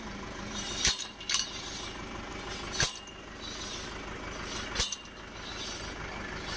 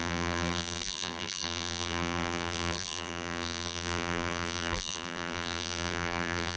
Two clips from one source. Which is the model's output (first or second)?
second